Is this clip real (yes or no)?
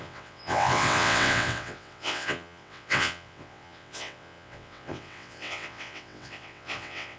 no